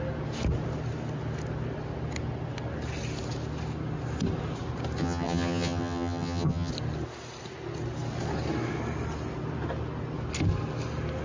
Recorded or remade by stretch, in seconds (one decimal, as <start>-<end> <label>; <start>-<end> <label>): 0.0-5.0 recorded; 5.0-6.7 remade; 6.7-11.2 recorded